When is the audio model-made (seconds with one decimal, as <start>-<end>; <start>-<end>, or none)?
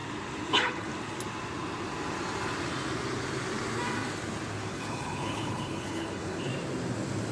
0.5-0.9; 4.7-6.5